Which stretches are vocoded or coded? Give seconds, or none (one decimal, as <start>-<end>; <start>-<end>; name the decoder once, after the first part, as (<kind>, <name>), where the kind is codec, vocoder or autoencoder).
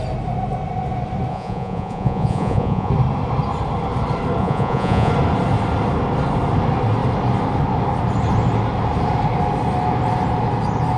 1.3-2.9 (vocoder, Vocos); 4.4-5.1